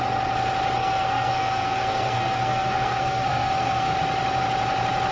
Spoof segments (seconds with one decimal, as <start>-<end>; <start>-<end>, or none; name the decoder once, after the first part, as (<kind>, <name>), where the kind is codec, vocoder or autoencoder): 0.8-3.9 (codec, SNAC)